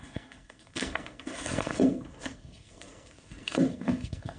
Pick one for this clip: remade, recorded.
remade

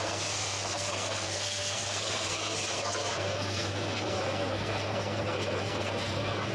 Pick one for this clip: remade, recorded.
remade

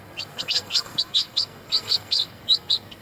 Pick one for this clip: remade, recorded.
remade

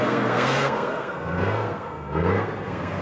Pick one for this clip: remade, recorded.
remade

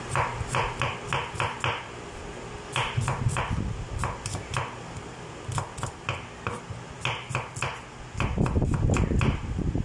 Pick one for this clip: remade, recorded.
recorded